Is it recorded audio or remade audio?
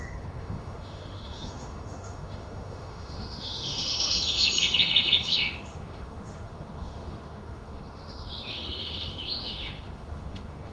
remade